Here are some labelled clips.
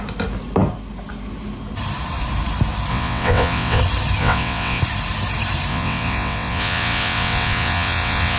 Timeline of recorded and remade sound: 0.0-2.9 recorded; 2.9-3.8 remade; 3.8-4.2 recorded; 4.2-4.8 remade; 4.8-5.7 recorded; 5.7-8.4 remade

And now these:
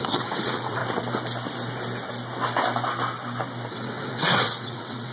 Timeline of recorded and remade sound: 0.0-0.8 remade; 0.8-3.7 recorded; 3.7-5.1 remade

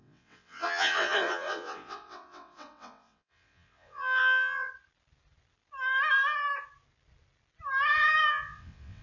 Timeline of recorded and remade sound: 0.0-4.7 remade; 4.7-8.3 recorded; 8.3-9.0 remade

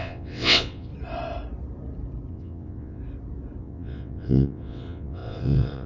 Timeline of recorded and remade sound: 0.0-0.9 remade; 0.9-2.3 recorded; 2.3-3.0 remade; 3.0-3.6 recorded; 3.6-5.9 remade

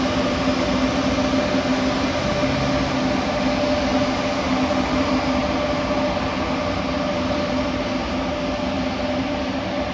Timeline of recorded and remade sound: 0.0-9.9 recorded

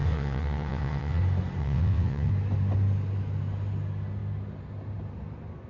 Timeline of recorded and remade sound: 0.0-1.2 remade; 1.2-1.6 recorded; 1.6-2.3 remade; 2.3-5.7 recorded